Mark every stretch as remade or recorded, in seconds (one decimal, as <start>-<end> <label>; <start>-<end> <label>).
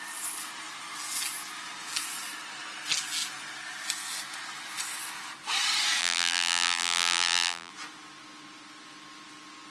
0.0-6.0 recorded; 6.0-7.7 remade; 7.7-9.7 recorded